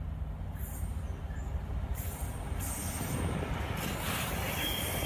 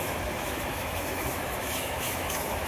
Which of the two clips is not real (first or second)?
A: second